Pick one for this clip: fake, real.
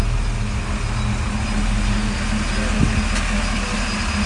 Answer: real